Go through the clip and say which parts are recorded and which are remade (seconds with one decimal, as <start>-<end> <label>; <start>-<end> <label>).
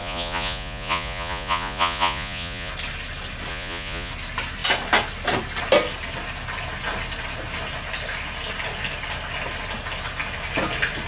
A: 0.0-2.7 remade; 2.7-3.5 recorded; 3.5-4.1 remade; 4.1-11.1 recorded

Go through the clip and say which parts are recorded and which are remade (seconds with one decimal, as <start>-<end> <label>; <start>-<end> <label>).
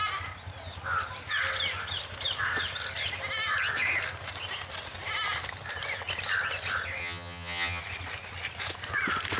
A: 0.0-7.0 recorded; 7.0-7.8 remade; 7.8-9.4 recorded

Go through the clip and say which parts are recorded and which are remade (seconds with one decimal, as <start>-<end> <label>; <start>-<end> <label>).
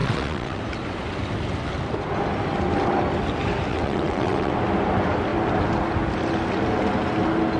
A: 0.0-0.6 remade; 0.6-3.7 recorded; 3.7-4.5 remade; 4.5-7.6 recorded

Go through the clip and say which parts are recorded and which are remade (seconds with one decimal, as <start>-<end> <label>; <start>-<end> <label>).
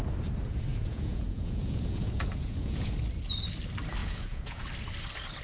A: 0.0-0.7 recorded; 0.7-2.9 remade; 2.9-4.0 recorded; 4.0-4.6 remade; 4.6-5.4 recorded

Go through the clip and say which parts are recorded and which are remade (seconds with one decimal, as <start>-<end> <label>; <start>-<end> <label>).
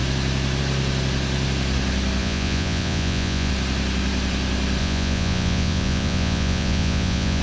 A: 0.0-2.2 recorded; 2.2-3.5 remade; 3.5-4.8 recorded; 4.8-7.4 remade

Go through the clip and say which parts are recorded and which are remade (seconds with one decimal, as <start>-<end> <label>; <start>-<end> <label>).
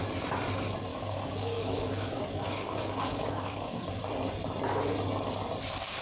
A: 0.0-0.9 recorded; 0.9-4.0 remade; 4.0-6.0 recorded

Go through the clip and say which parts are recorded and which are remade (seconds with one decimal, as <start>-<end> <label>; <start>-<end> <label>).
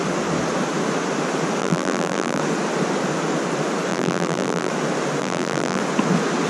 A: 0.0-1.6 recorded; 1.6-2.4 remade; 2.4-3.9 recorded; 3.9-4.7 remade; 4.7-5.2 recorded; 5.2-5.8 remade; 5.8-6.5 recorded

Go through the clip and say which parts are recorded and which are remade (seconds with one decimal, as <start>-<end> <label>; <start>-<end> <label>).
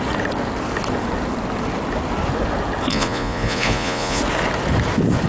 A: 0.0-2.9 recorded; 2.9-4.2 remade; 4.2-5.3 recorded